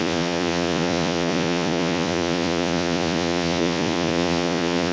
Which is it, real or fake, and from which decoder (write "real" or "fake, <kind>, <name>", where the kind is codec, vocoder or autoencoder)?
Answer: fake, vocoder, Vocos